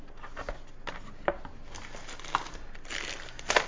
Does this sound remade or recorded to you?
recorded